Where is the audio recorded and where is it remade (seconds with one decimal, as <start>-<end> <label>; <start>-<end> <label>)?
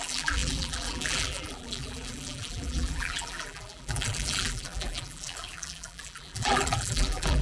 0.0-7.4 remade